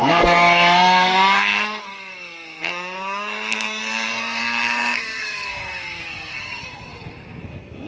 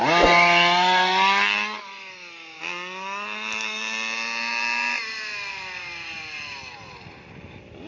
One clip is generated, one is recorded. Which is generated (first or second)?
first